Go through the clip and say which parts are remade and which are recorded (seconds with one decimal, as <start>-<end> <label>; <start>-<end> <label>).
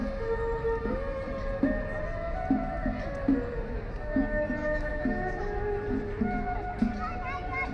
0.0-4.6 recorded; 4.6-5.4 remade; 5.4-7.7 recorded